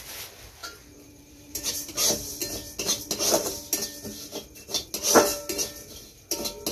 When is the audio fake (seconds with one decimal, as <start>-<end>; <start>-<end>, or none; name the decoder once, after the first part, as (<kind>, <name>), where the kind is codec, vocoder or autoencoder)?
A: 0.6-1.7 (vocoder, BigVGAN v2)